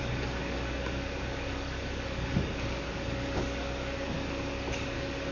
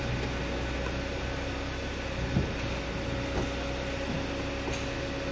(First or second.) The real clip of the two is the second